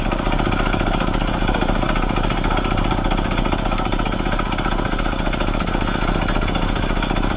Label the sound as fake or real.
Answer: real